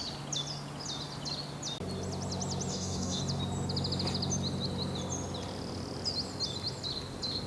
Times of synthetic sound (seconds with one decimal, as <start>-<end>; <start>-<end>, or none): 2.7-3.2